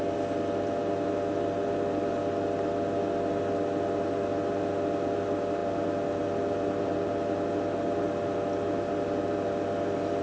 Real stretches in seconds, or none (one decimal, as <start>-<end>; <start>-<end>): 0.0-10.2